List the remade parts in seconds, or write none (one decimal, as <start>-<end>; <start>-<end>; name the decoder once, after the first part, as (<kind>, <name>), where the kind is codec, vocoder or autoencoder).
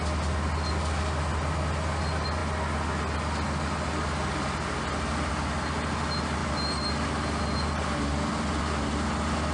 none